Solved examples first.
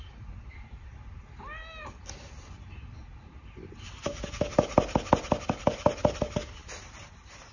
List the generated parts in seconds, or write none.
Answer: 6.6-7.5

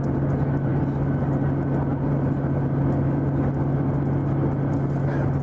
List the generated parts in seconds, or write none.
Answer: none

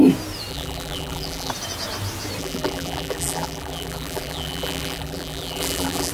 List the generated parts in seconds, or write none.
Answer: 0.5-1.5; 2.4-6.1

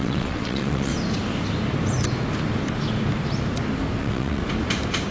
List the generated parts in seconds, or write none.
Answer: 0.0-0.9; 4.0-4.4

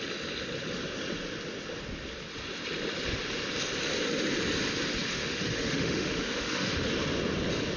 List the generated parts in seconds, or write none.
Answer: 5.1-6.9

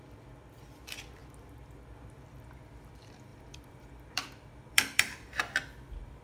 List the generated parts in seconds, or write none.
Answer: 3.3-5.4